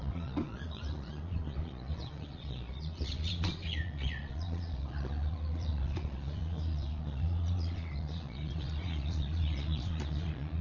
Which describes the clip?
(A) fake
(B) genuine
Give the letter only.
A